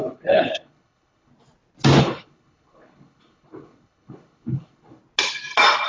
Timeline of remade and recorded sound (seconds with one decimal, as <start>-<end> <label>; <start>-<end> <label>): 0.0-1.3 remade; 1.3-2.0 recorded; 2.0-5.0 remade; 5.0-5.9 recorded